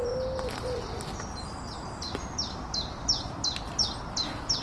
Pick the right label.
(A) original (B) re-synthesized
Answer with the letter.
A